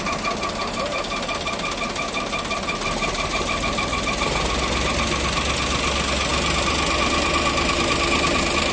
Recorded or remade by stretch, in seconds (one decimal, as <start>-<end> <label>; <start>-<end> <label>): 0.0-8.7 recorded